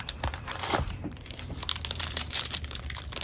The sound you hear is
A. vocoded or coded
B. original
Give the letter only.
A